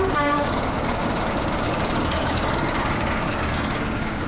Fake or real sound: fake